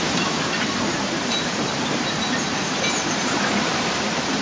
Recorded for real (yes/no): no